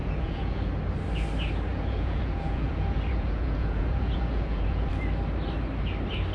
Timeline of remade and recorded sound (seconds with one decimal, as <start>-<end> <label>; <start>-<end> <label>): 0.0-0.8 remade; 0.8-1.7 recorded; 1.7-4.9 remade; 4.9-6.3 recorded